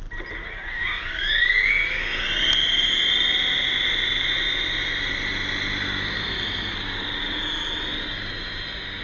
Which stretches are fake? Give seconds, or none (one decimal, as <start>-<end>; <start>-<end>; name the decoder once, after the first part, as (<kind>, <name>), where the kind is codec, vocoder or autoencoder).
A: 0.4-2.1 (codec, DAC)